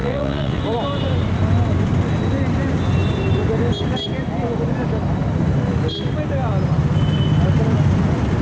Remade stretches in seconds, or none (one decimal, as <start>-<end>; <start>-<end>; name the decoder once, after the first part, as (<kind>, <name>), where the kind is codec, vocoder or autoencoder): 0.0-0.6 (vocoder, WaveNeXt)